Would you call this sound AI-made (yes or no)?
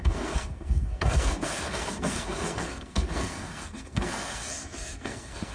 yes